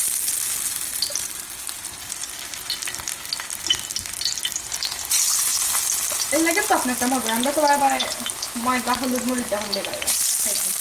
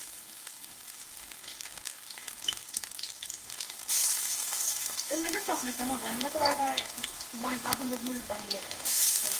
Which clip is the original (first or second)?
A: first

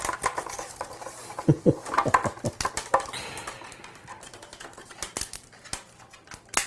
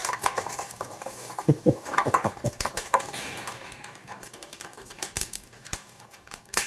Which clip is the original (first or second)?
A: first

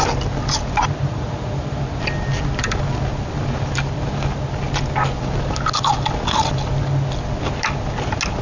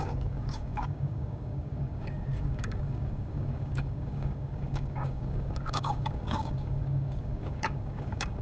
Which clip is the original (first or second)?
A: first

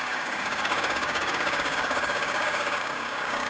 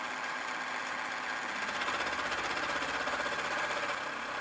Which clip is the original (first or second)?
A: second